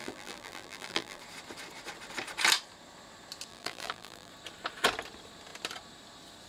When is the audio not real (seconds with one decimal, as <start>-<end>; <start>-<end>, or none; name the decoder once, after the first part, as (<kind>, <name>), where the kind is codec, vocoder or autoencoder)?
0.0-1.2 (vocoder, BigVGAN v2); 3.5-4.3